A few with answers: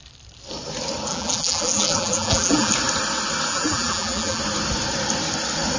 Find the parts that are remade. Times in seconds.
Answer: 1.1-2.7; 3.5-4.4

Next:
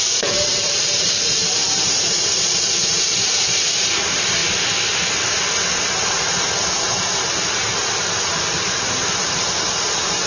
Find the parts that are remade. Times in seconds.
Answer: 0.0-4.4; 6.7-10.3

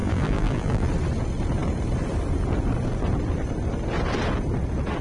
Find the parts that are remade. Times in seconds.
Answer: 0.0-0.9

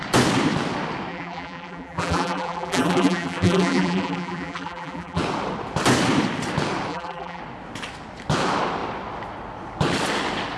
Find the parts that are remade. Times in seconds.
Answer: 1.1-5.2; 6.9-7.4